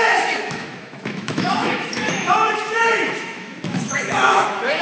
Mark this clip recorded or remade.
remade